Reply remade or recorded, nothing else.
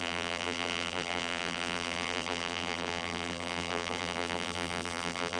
remade